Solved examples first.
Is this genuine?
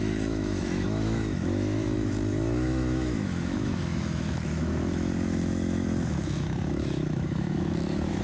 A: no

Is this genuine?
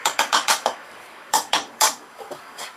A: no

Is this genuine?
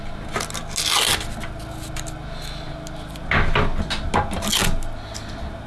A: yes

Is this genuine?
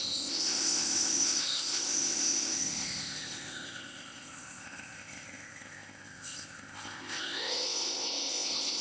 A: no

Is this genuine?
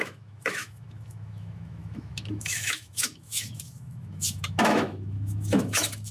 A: no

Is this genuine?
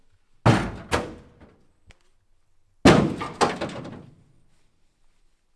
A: yes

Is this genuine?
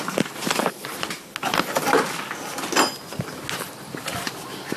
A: yes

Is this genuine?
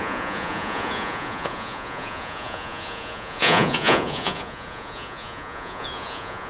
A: no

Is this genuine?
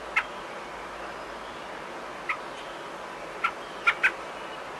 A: yes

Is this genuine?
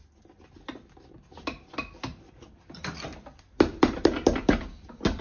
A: yes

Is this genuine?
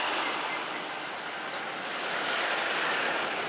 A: yes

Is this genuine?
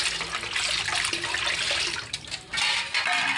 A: yes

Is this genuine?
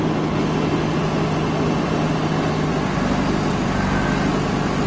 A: yes